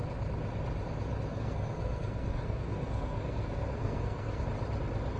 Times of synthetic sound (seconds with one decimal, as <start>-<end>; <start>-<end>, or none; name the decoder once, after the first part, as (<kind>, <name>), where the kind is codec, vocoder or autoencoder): 1.3-4.4 (codec, SNAC)